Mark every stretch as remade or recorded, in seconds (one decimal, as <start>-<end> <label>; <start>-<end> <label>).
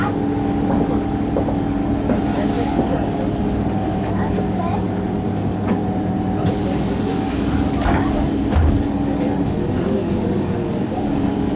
0.0-1.8 remade; 1.8-2.6 recorded; 2.6-5.8 remade; 5.8-6.5 recorded; 6.5-11.6 remade